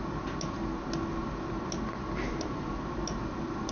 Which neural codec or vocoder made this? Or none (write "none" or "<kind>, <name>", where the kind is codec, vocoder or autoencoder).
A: none